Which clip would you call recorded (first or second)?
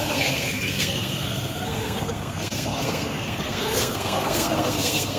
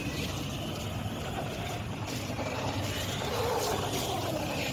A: second